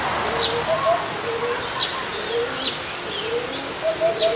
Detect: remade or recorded recorded